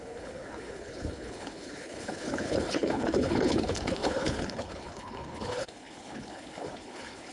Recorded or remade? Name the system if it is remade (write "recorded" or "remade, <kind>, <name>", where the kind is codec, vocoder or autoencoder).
remade, codec, HILCodec